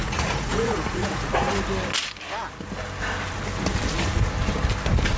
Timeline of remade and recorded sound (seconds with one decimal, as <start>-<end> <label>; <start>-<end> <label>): 0.0-1.5 remade; 1.5-5.2 recorded